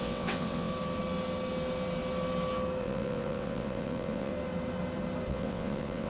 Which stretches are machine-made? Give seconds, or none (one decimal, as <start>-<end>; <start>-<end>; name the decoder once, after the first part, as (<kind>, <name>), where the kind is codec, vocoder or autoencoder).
0.0-0.7 (vocoder, WaveNeXt); 2.8-4.3; 5.3-6.1